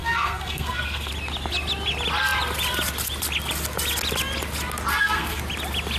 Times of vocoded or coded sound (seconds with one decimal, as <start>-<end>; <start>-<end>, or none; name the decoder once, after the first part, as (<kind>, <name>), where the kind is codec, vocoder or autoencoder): 0.0-1.1 (codec, SNAC); 4.9-5.4